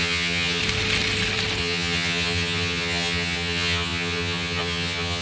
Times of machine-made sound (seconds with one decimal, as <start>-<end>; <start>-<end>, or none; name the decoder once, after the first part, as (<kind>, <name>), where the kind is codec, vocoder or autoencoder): 0.0-0.6 (vocoder, HiFi-GAN); 1.6-5.2